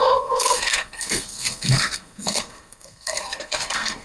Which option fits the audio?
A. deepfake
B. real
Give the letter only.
A